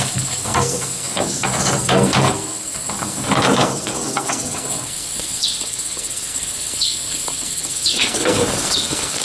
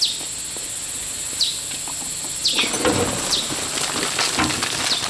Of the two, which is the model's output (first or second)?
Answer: first